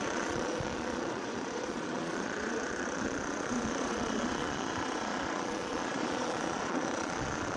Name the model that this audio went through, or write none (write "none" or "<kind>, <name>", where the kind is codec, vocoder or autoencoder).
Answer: vocoder, Vocos